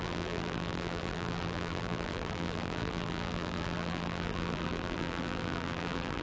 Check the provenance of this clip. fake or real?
fake